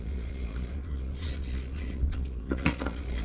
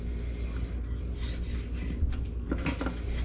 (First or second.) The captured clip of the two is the second